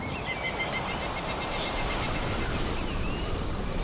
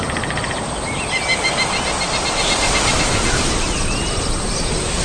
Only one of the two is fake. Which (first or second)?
first